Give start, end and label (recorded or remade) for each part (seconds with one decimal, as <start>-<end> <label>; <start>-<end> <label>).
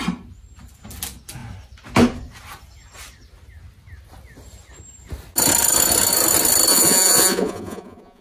0.0-6.7 recorded; 6.7-8.2 remade